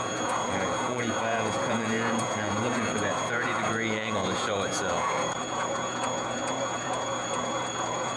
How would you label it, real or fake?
fake